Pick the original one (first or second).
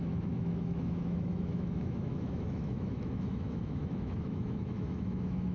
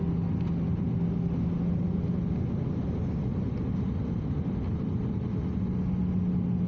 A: second